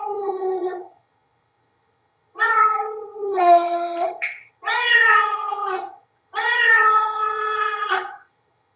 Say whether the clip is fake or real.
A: fake